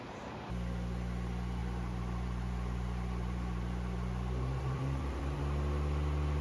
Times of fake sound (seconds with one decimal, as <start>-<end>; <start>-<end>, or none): 1.6-5.4